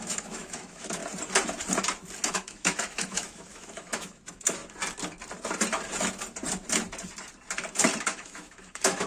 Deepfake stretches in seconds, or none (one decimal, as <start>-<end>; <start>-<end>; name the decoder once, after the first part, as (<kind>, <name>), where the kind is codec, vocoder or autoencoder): 0.0-1.0 (autoencoder, DAC-VAE); 2.3-4.6; 8.0-9.1